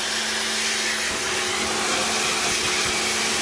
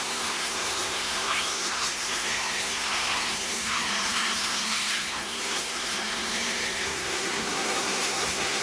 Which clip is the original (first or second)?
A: first